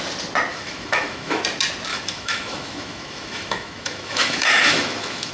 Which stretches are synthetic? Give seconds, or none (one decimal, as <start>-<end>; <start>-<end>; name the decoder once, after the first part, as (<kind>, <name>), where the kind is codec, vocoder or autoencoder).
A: 0.5-1.4 (autoencoder, DAC-VAE); 1.9-5.3